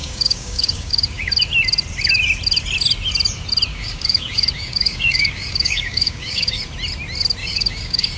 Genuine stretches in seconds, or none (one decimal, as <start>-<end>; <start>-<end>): 1.3-3.7; 6.6-7.4